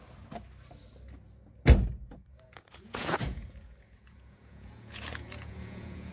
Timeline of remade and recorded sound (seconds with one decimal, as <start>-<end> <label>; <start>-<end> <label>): 0.0-2.0 recorded; 2.0-6.1 remade